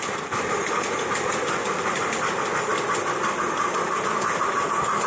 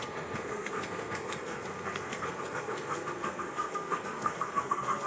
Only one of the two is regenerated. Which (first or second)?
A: second